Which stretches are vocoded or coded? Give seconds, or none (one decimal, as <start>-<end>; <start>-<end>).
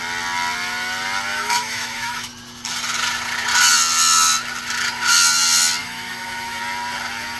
1.3-2.3; 5.8-6.6